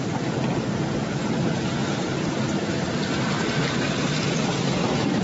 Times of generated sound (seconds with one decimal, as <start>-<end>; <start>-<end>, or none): none